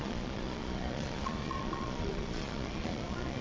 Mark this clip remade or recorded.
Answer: remade